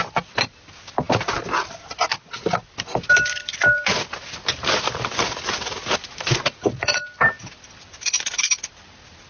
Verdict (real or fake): real